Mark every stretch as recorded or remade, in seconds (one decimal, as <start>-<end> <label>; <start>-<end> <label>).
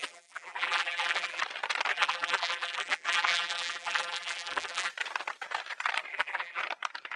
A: 0.0-1.4 remade; 1.4-1.9 recorded; 1.9-4.9 remade; 4.9-6.1 recorded; 6.1-6.6 remade; 6.6-7.2 recorded